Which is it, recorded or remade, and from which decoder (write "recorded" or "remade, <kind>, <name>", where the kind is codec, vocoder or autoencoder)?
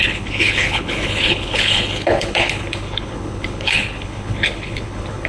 remade, codec, HILCodec